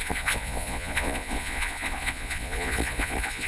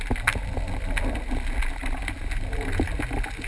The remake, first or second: first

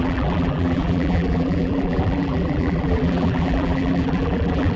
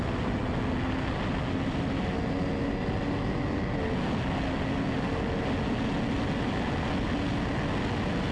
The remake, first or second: first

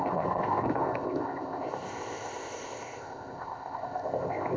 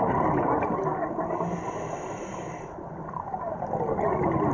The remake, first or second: first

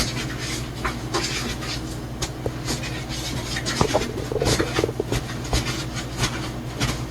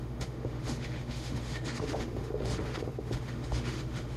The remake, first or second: second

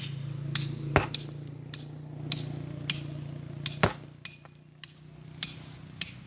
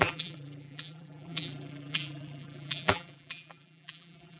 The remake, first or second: second